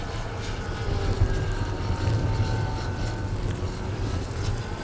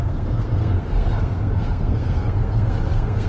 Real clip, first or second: first